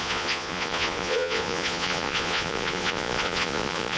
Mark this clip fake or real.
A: fake